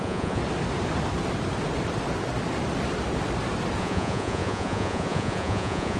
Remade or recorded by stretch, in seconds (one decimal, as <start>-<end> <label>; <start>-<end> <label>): 0.0-0.4 remade; 0.4-3.8 recorded; 3.8-6.0 remade